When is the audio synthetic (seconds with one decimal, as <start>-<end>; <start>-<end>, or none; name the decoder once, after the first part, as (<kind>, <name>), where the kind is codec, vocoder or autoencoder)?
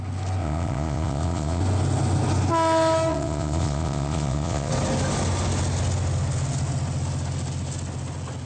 0.4-1.6 (vocoder, Vocos); 3.1-4.7